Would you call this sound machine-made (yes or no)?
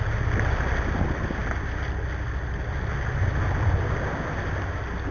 no